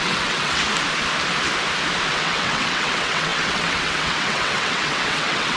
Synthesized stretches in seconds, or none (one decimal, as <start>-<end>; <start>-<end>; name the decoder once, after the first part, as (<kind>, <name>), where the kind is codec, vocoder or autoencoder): 0.0-0.7 (vocoder, WaveNeXt); 2.1-5.6